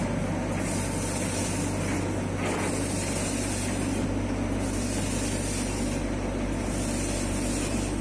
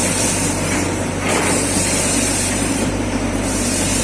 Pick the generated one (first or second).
second